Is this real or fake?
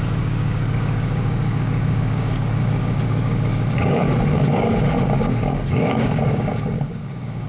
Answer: fake